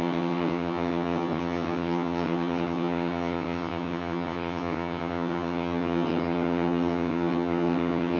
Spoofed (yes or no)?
yes